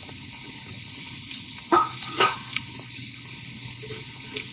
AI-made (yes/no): yes